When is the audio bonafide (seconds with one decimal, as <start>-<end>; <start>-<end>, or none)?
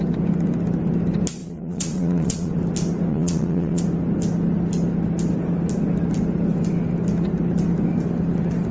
0.0-1.4; 2.5-3.1; 3.8-8.7